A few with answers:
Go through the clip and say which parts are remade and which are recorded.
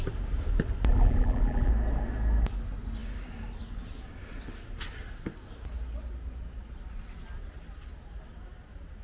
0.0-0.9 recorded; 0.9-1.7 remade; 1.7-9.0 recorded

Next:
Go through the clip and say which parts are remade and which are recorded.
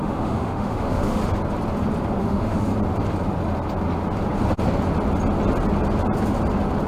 0.0-1.2 remade; 1.2-2.2 recorded; 2.2-2.7 remade; 2.7-6.9 recorded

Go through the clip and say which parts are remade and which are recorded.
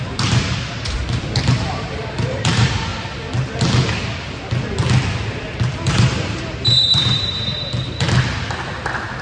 0.0-1.0 remade; 1.0-1.5 recorded; 1.5-2.9 remade; 2.9-5.3 recorded; 5.3-7.5 remade; 7.5-9.2 recorded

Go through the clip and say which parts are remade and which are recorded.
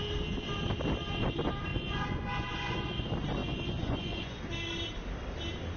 0.0-1.7 recorded; 1.7-2.9 remade; 2.9-3.4 recorded; 3.4-4.4 remade; 4.4-5.8 recorded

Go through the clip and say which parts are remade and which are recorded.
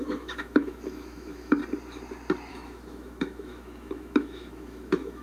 0.0-1.6 remade; 1.6-2.5 recorded; 2.5-5.2 remade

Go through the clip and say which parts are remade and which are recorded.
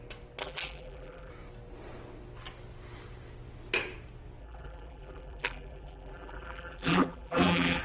0.0-0.4 recorded; 0.4-1.3 remade; 1.3-4.4 recorded; 4.4-7.8 remade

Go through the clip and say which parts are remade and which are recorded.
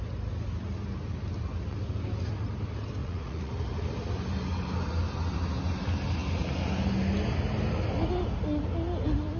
0.0-3.0 recorded; 3.0-3.5 remade; 3.5-9.4 recorded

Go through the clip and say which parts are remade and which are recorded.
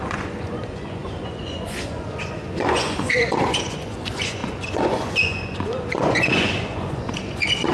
0.0-7.7 remade